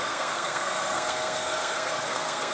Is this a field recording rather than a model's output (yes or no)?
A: no